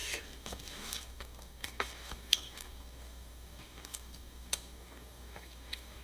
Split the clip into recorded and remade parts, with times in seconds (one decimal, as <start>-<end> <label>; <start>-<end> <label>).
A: 0.0-6.0 remade